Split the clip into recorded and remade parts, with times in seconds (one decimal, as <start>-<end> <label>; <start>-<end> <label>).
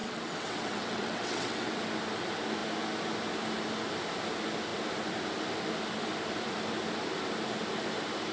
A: 0.0-1.8 remade; 1.8-8.3 recorded